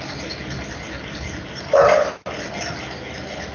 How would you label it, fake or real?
real